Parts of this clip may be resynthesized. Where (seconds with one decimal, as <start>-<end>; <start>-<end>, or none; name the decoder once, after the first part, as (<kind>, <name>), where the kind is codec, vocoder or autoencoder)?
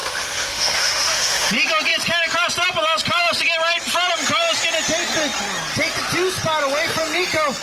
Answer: 0.0-1.5 (autoencoder, DAC-VAE)